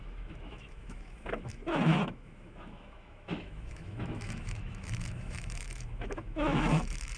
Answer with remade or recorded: remade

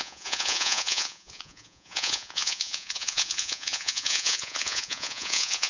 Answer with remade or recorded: remade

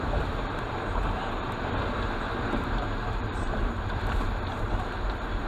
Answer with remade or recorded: remade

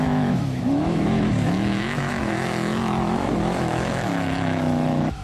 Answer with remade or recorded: remade